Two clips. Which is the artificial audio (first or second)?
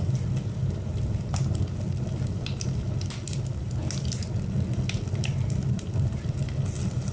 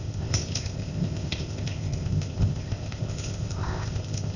second